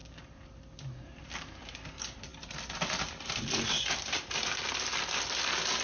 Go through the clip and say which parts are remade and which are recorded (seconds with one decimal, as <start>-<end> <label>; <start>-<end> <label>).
0.0-1.2 recorded; 1.2-5.8 remade